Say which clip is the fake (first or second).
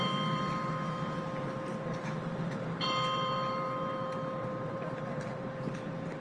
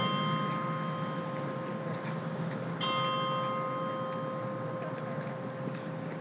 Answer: first